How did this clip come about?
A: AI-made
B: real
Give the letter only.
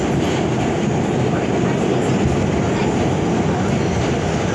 B